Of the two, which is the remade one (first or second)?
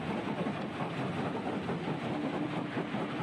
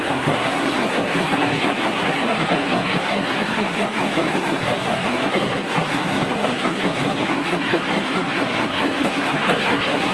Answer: second